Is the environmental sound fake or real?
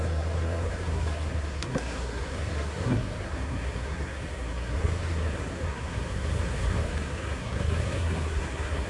fake